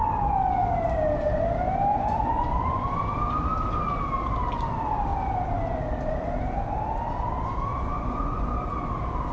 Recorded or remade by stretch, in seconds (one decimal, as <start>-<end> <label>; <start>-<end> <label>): 0.0-1.9 recorded; 1.9-3.0 remade; 3.0-7.7 recorded; 7.7-8.5 remade; 8.5-9.3 recorded